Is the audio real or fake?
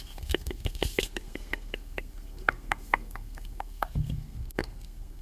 fake